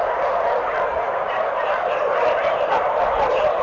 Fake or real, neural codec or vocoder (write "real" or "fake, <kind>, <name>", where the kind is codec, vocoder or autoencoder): real